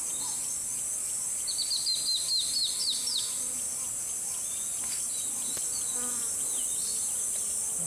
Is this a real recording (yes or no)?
yes